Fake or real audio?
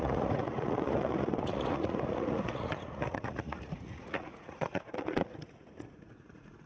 fake